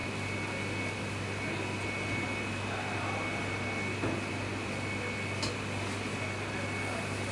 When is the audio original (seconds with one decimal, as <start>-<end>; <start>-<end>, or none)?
0.0-7.3